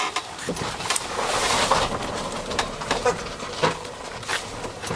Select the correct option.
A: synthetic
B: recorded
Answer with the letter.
A